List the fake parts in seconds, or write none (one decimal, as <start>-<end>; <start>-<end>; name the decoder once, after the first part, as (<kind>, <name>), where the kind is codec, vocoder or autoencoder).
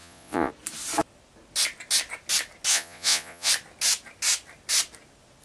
0.0-0.5 (vocoder, Vocos); 2.7-3.5